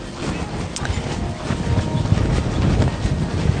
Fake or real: real